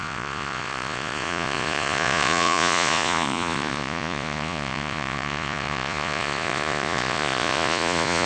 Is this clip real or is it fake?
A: fake